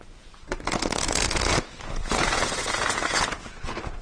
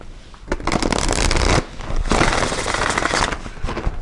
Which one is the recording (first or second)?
second